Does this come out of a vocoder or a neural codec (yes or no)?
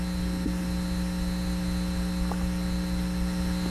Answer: no